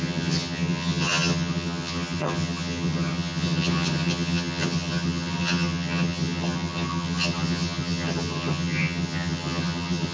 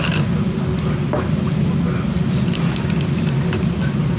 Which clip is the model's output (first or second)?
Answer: first